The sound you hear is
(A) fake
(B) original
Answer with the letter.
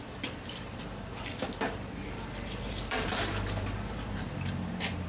A